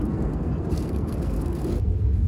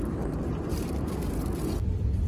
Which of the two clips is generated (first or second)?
first